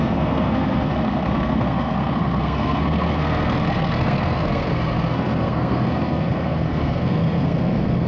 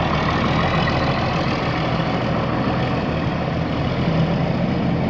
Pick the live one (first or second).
second